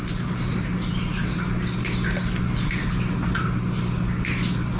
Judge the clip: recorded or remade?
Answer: recorded